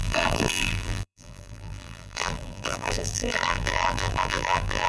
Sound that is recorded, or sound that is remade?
remade